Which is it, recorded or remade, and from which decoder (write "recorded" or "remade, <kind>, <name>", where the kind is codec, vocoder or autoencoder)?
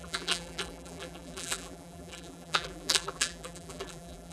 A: remade, vocoder, BigVGAN v2